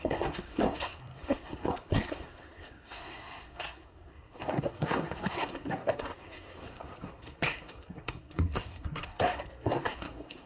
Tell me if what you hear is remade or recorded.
remade